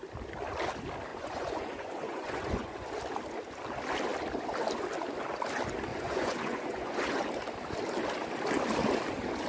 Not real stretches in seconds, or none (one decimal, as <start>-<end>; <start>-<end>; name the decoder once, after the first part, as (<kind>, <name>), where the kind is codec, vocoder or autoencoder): 1.1-2.9 (vocoder, Vocos); 5.9-7.0